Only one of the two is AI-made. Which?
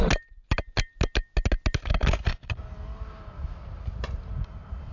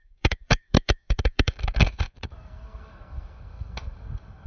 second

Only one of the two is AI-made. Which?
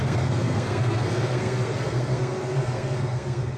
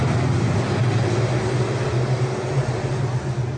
first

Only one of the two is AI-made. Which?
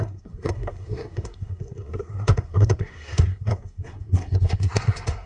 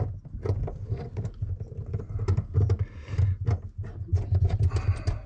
first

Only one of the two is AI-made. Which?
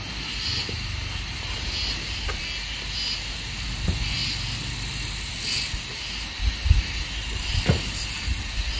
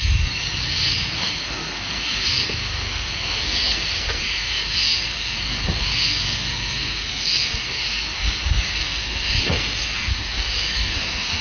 second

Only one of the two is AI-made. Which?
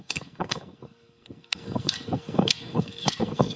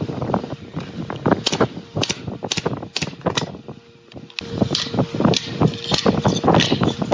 first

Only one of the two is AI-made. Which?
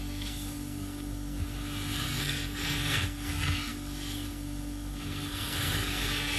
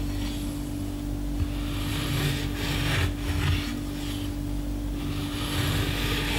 first